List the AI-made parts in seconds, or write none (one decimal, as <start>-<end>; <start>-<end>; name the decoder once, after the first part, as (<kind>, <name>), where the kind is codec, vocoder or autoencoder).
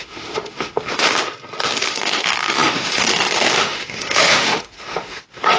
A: 0.0-1.1 (autoencoder, DAC-VAE); 1.9-5.6